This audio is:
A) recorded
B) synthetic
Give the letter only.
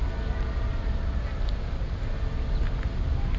A